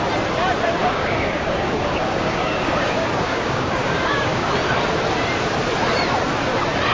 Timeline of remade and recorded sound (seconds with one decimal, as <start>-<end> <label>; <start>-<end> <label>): 0.0-0.8 recorded; 0.8-4.5 remade; 4.5-6.9 recorded

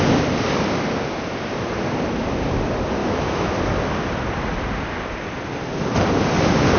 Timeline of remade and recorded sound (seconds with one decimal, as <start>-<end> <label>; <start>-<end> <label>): 0.0-3.0 recorded; 3.0-3.5 remade; 3.5-6.8 recorded

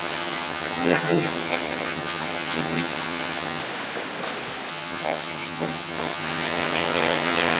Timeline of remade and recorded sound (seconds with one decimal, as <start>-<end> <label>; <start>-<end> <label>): 0.0-3.6 remade; 3.6-4.7 recorded; 4.7-7.6 remade

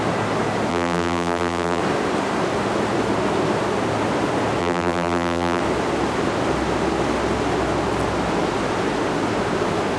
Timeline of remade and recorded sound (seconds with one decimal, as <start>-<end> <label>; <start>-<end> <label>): 0.0-0.7 recorded; 0.7-1.8 remade; 1.8-4.6 recorded; 4.6-5.6 remade; 5.6-10.0 recorded